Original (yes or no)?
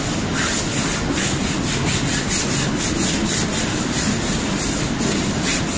yes